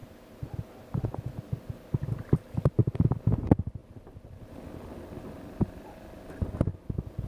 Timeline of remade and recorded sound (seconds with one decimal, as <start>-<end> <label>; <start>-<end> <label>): 0.0-7.3 recorded